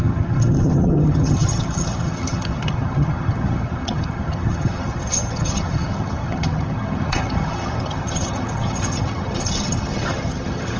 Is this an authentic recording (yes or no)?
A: no